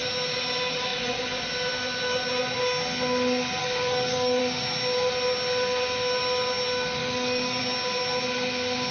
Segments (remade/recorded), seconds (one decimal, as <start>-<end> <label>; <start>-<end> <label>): 0.0-3.6 recorded; 3.6-4.4 remade; 4.4-7.0 recorded; 7.0-7.6 remade; 7.6-8.9 recorded